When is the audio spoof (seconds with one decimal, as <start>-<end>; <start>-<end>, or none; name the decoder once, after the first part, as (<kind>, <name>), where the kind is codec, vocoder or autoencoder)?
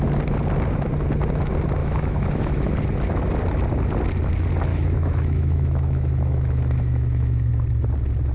1.8-2.7 (autoencoder, DAC-VAE); 4.7-7.5